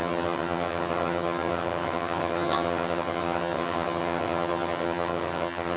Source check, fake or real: fake